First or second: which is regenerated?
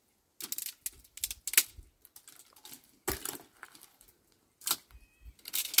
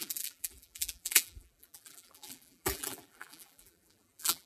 second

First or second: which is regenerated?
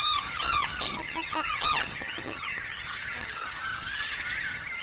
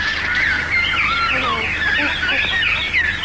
first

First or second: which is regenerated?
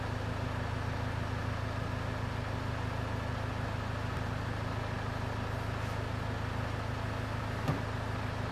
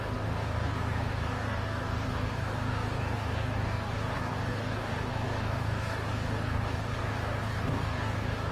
second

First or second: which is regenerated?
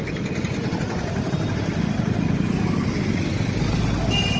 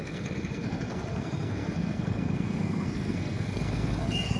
second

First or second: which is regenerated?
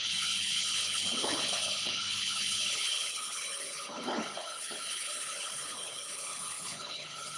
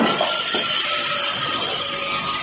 first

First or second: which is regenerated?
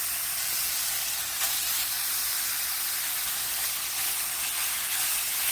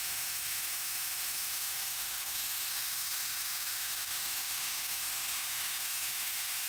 second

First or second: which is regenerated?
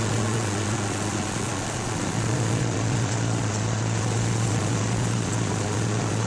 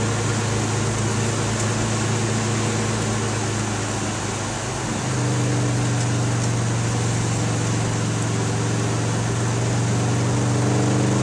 first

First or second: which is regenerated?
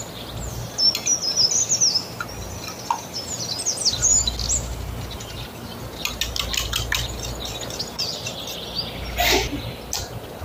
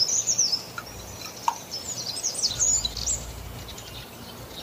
second